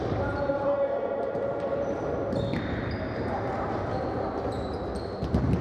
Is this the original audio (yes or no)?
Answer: yes